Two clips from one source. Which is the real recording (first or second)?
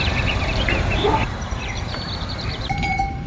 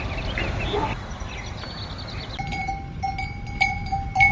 second